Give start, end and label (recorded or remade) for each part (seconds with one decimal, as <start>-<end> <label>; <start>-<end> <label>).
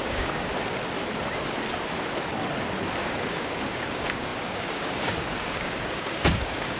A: 0.0-0.5 remade; 0.5-3.0 recorded; 3.0-6.8 remade